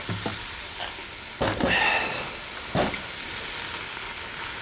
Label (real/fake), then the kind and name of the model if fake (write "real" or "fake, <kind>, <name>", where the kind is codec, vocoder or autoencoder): real